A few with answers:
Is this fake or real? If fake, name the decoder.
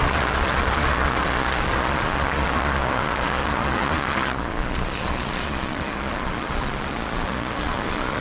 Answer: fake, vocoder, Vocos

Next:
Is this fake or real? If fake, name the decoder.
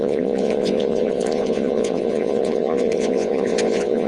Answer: fake, vocoder, Vocos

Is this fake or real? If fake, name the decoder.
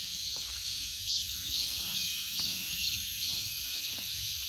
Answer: fake, codec, SNAC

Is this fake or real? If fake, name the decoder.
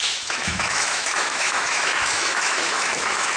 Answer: fake, autoencoder, DAC-VAE